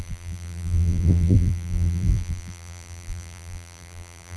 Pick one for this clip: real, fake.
fake